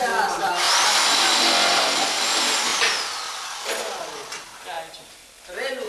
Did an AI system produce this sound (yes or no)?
no